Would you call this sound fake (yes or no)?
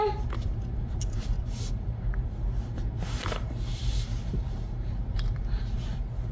yes